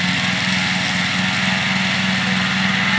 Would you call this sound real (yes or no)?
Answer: yes